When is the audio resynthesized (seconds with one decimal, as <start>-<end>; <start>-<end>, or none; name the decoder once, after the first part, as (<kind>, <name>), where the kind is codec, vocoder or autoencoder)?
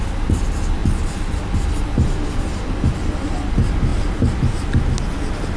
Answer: 3.9-4.7 (vocoder, BigVGAN v2)